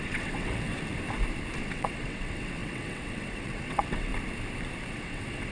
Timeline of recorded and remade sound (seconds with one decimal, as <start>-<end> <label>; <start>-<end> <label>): 0.0-0.7 remade; 0.7-1.6 recorded; 1.6-4.1 remade; 4.1-4.9 recorded; 4.9-5.5 remade